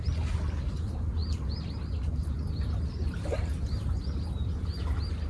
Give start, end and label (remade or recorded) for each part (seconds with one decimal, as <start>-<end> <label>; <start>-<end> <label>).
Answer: 0.0-5.3 recorded